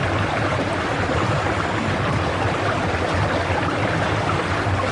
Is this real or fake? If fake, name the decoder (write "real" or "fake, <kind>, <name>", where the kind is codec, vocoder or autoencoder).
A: real